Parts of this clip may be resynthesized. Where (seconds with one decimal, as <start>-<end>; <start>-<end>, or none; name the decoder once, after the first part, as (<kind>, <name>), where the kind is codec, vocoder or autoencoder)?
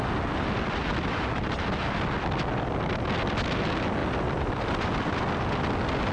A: 4.0-5.2 (vocoder, BigVGAN v2)